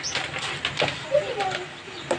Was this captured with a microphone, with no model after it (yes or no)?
yes